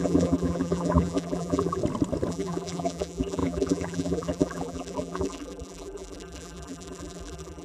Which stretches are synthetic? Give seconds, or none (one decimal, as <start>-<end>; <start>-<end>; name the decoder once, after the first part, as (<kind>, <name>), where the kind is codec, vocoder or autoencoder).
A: 0.0-1.8 (vocoder, BigVGAN v2); 2.3-7.6